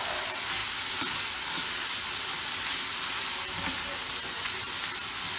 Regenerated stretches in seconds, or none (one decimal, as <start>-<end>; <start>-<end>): 4.2-4.7